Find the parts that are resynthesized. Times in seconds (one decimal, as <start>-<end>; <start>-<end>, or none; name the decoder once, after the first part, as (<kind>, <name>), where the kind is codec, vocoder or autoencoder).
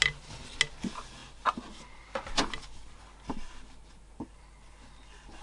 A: none